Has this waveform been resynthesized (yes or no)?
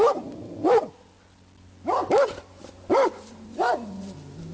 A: no